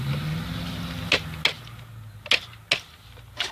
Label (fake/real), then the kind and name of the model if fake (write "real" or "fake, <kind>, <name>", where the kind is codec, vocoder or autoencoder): real